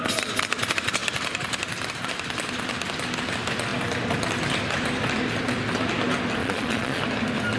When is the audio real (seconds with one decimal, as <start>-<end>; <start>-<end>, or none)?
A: 0.0-6.4; 7.0-7.6